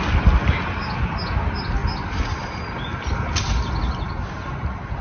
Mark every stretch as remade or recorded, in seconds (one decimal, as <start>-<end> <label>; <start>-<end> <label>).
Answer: 0.0-5.0 recorded